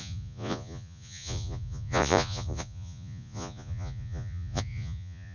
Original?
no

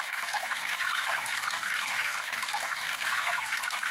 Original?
no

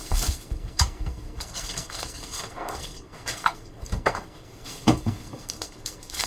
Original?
no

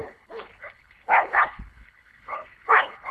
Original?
no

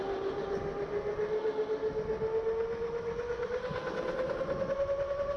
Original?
yes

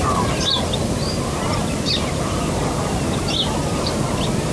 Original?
yes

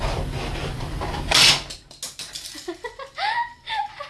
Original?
yes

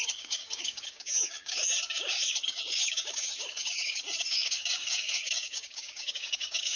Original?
no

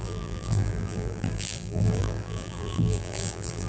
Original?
no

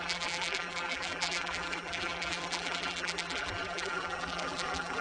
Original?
no